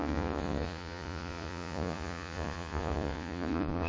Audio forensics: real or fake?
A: fake